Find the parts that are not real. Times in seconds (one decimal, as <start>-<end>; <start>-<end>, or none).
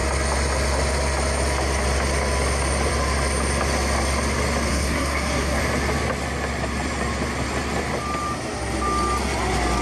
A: 4.7-5.6